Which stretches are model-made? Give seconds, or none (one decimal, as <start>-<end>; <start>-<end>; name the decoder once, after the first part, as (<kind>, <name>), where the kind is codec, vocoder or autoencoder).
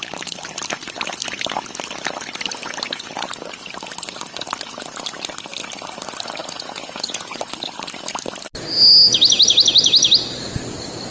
6.4-7.4 (vocoder, Vocos)